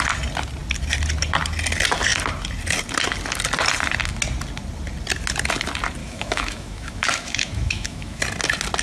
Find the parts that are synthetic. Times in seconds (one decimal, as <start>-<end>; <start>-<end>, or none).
6.0-8.2